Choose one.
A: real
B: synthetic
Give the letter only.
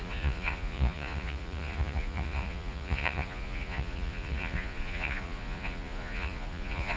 B